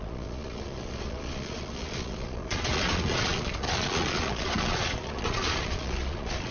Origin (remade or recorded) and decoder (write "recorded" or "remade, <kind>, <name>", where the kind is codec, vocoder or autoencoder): remade, vocoder, Vocos